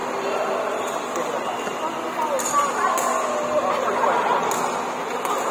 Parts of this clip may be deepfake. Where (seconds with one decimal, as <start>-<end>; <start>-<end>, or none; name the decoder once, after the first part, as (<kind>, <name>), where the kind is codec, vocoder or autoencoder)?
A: none